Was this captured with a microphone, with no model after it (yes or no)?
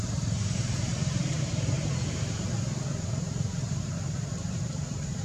no